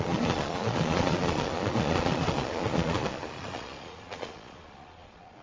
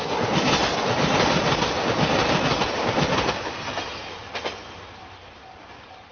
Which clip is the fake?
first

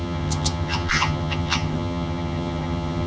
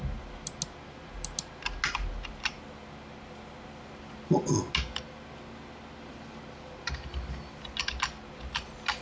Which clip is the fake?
first